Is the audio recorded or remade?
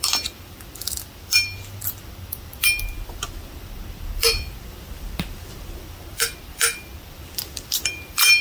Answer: remade